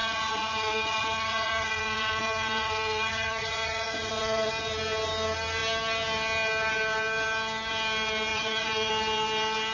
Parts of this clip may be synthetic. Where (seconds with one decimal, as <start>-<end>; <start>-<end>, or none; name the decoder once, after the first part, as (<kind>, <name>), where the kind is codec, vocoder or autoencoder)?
0.0-4.5 (vocoder, Vocos); 8.3-8.9